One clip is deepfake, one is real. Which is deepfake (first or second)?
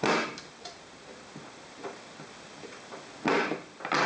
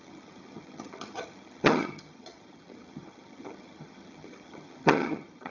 second